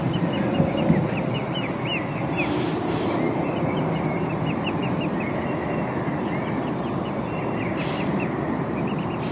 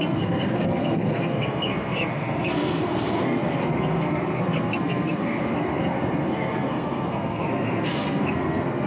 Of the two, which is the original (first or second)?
first